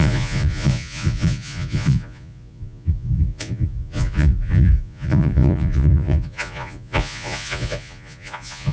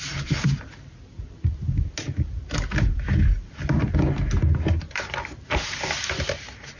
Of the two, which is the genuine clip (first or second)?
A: second